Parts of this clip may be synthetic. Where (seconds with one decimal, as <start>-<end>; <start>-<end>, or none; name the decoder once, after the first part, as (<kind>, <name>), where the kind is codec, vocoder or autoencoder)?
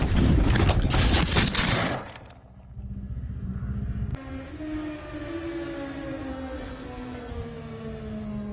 6.3-7.3 (codec, SNAC)